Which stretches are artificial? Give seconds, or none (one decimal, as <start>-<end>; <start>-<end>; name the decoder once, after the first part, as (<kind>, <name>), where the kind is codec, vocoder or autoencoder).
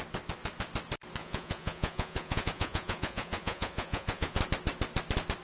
1.2-4.4 (vocoder, Vocos)